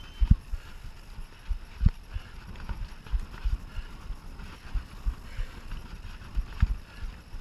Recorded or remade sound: recorded